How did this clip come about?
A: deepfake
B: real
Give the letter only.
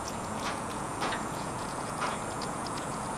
A